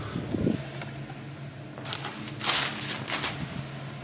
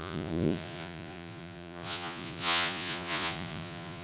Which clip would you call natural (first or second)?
first